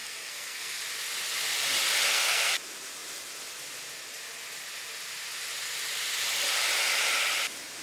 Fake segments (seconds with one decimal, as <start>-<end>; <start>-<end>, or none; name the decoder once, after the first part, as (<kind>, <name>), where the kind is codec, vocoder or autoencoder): 0.0-0.8 (codec, SNAC); 2.1-2.6